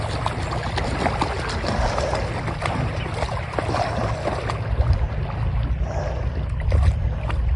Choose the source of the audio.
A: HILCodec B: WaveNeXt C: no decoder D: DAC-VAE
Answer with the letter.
C